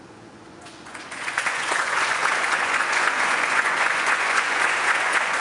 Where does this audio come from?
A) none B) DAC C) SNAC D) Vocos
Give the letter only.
D